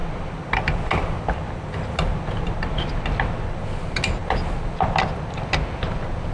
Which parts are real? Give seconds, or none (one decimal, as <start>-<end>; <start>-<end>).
0.0-6.3